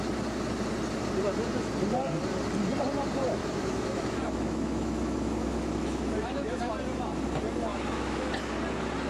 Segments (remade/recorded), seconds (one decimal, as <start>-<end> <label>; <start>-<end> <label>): 0.0-3.4 recorded; 3.4-6.7 remade; 6.7-7.7 recorded; 7.7-8.3 remade; 8.3-9.1 recorded